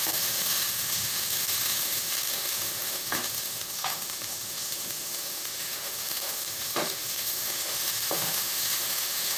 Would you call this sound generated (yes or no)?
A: yes